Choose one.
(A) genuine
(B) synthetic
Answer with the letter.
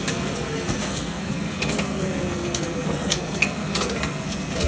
B